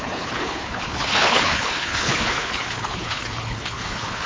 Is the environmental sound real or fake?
fake